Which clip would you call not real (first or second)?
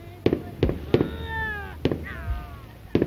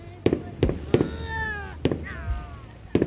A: second